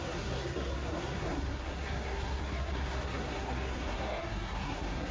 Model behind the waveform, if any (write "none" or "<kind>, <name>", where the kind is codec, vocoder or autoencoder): codec, SNAC